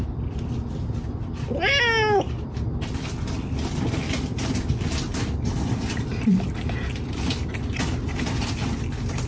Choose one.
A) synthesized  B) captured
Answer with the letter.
B